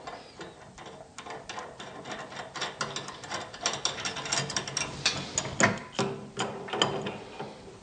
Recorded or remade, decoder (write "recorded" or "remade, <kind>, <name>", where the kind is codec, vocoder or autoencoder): recorded